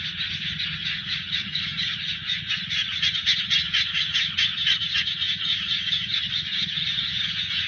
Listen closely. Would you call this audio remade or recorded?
remade